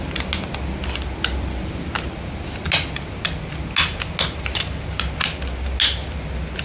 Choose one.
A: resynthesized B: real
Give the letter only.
B